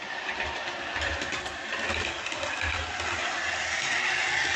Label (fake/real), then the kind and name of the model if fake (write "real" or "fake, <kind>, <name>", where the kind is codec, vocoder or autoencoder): real